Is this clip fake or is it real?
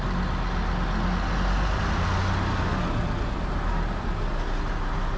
real